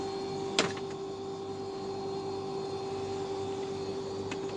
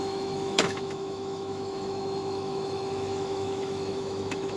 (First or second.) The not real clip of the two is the second